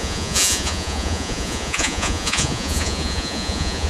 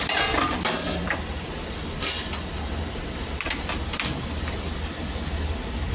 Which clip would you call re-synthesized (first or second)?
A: first